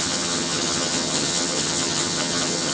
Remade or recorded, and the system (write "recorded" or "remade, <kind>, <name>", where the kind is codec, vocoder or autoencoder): remade, vocoder, HiFi-GAN